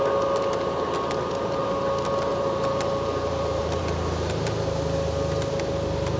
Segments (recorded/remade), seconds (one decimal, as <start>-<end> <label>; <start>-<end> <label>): 0.0-2.3 recorded; 2.3-3.8 remade; 3.8-6.2 recorded